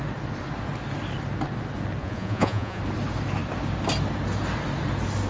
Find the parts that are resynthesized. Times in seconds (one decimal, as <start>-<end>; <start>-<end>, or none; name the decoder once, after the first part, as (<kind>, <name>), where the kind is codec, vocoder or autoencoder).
2.0-2.8 (vocoder, Vocos)